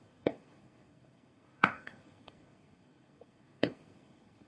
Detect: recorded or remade remade